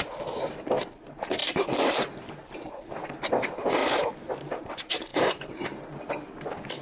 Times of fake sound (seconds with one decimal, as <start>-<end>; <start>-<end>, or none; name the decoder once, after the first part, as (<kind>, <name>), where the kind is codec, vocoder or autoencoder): 1.4-3.1 (vocoder, BigVGAN v2); 3.8-4.6; 5.1-5.8